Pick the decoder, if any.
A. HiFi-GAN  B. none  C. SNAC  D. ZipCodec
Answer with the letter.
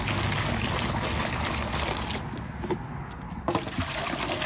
B